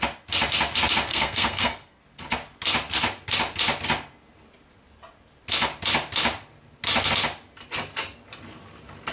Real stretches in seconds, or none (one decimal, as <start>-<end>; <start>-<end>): 0.0-1.1; 2.0-9.1